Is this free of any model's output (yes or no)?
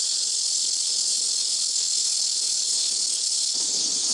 no